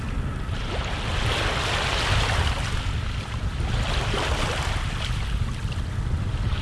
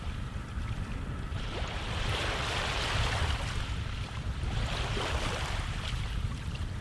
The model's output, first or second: second